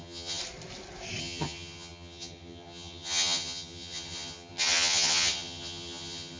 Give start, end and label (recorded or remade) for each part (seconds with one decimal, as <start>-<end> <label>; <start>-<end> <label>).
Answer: 0.0-0.4 remade; 0.4-1.2 recorded; 1.2-6.4 remade